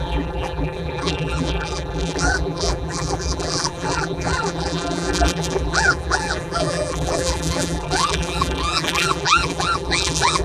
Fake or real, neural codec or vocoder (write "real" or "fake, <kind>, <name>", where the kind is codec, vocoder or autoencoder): fake, vocoder, BigVGAN v2